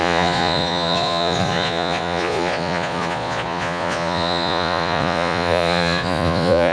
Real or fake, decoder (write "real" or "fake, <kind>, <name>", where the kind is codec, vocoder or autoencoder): fake, vocoder, Vocos